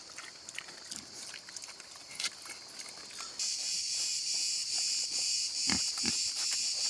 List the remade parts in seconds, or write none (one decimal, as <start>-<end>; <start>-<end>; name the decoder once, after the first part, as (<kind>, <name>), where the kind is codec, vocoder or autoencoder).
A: none